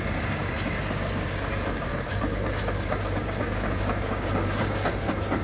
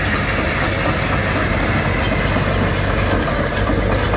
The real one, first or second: second